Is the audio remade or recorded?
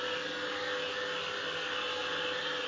recorded